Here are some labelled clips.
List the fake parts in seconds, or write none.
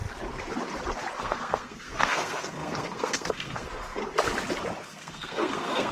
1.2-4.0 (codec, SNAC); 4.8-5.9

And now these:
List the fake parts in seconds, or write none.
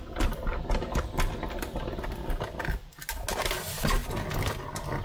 none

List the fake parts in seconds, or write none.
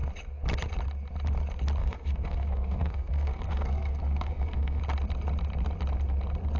1.8-4.8 (codec, SNAC)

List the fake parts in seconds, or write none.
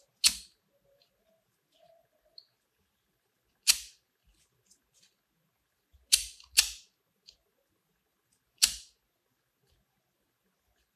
none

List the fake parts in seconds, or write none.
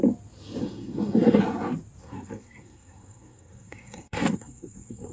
0.6-1.4 (codec, SNAC); 2.0-5.1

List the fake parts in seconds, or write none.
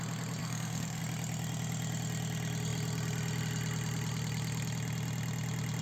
0.4-1.0 (codec, SNAC)